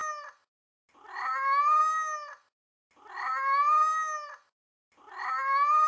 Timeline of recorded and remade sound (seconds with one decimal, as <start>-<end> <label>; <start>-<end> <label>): 0.0-5.9 recorded